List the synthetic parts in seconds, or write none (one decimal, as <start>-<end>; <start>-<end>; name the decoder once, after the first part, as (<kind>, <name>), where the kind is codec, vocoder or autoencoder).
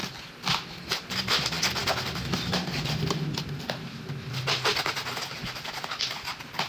none